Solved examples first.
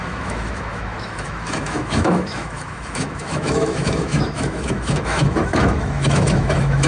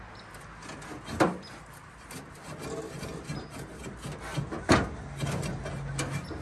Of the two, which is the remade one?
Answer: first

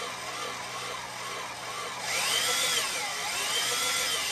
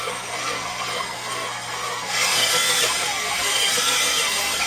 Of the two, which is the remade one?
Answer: second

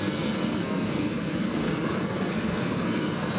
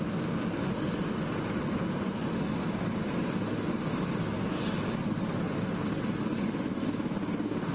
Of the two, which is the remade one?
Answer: first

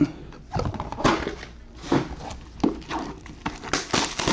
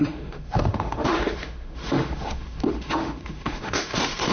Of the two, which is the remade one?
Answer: second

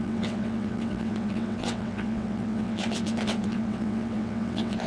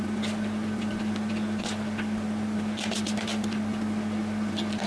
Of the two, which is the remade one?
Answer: first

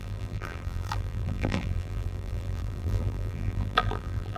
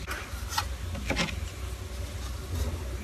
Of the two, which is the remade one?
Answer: first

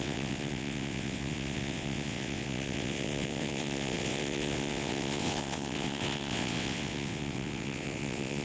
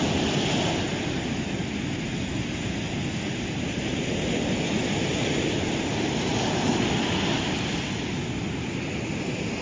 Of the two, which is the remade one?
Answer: first